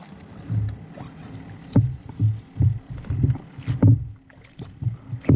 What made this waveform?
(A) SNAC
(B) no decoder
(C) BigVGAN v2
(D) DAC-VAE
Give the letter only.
B